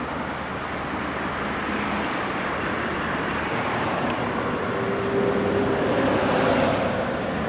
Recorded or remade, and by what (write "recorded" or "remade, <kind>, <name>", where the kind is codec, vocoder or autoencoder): recorded